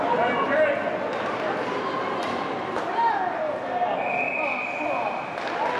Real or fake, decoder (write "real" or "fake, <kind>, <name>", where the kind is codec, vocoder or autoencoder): real